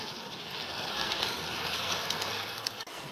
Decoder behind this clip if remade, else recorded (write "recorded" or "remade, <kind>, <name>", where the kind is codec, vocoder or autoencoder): remade, codec, SNAC